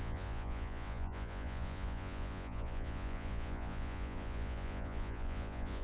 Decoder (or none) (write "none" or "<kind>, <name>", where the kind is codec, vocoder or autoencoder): vocoder, Vocos